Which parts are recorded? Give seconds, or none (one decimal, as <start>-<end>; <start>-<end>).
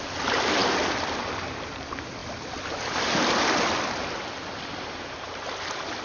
0.0-6.0